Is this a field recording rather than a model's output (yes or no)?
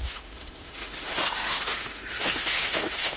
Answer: no